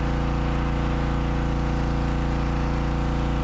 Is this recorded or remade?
recorded